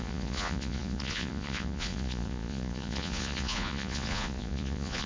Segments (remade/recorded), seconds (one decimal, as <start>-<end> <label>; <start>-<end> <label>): 0.0-5.1 remade